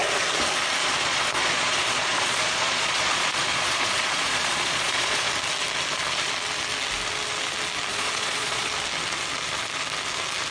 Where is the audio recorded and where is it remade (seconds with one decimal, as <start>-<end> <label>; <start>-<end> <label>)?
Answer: 0.0-0.8 recorded; 0.8-5.3 remade; 5.3-7.9 recorded; 7.9-8.7 remade; 8.7-10.5 recorded